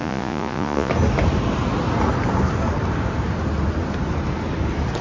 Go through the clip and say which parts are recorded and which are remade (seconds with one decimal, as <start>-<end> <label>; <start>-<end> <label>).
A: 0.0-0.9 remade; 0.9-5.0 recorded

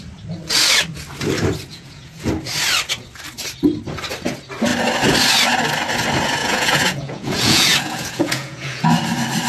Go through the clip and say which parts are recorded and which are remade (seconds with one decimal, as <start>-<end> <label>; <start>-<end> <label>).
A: 0.0-1.7 recorded; 1.7-2.3 remade; 2.3-6.4 recorded; 6.4-8.9 remade; 8.9-9.5 recorded

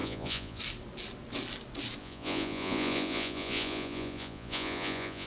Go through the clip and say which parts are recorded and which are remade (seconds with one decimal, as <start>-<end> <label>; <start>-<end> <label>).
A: 0.0-0.6 remade; 0.6-2.0 recorded; 2.0-5.3 remade

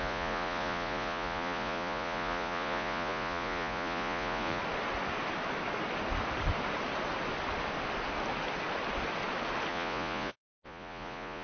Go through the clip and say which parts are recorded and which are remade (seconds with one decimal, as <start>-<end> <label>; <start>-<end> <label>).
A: 0.0-4.6 remade; 4.6-9.7 recorded; 9.7-11.4 remade

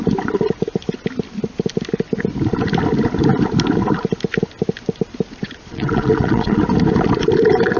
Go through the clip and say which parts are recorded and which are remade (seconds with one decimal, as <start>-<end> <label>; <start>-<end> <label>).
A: 0.0-5.3 recorded; 5.3-6.6 remade; 6.6-7.8 recorded

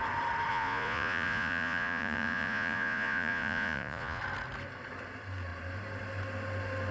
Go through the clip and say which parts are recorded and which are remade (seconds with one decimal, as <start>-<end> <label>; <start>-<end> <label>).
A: 0.0-0.5 recorded; 0.5-4.2 remade; 4.2-6.9 recorded

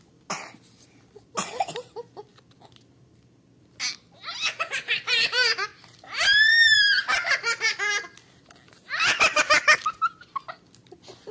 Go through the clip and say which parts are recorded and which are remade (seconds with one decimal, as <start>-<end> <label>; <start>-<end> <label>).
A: 0.0-11.3 recorded

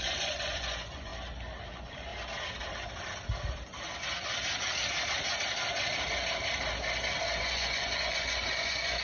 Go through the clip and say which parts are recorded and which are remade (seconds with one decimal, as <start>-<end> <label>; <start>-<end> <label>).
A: 0.0-1.1 remade; 1.1-1.7 recorded; 1.7-2.1 remade; 2.1-7.4 recorded; 7.4-9.0 remade